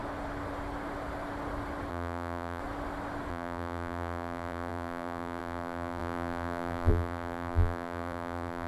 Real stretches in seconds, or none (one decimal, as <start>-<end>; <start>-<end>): 0.0-1.9; 2.6-3.3

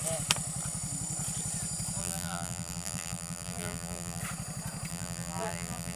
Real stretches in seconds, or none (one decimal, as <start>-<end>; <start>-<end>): 0.0-2.0; 4.2-4.9

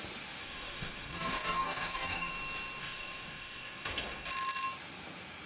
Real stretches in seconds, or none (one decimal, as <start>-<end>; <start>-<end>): 0.0-0.4; 2.3-2.8; 4.3-5.5

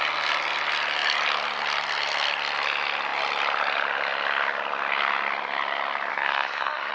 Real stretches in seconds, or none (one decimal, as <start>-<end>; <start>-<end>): 0.0-6.1

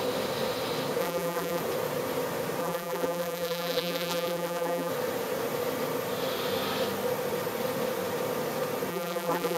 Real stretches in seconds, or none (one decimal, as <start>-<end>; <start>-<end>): 0.0-1.0; 1.6-2.6; 4.9-8.9

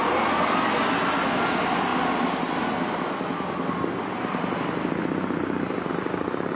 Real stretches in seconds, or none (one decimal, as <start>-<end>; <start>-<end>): 0.0-6.6

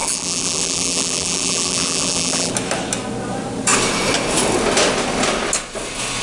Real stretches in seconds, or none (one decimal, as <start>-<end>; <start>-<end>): 2.5-6.2

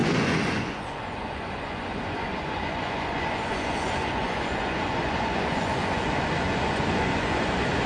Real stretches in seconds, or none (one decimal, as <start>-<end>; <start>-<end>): none